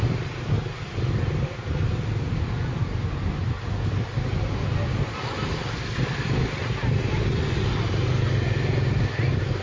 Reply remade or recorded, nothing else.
recorded